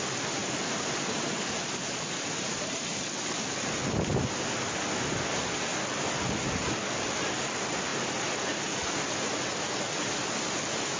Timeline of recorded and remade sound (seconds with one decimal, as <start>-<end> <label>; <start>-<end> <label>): 0.0-0.4 recorded; 0.4-3.2 remade; 3.2-11.0 recorded